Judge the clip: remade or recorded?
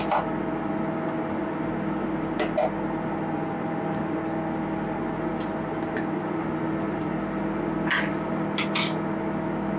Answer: recorded